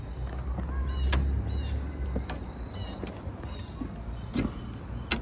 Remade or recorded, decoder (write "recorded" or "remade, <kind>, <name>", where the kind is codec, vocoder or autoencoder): recorded